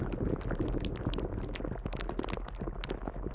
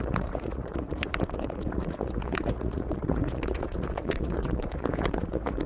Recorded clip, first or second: first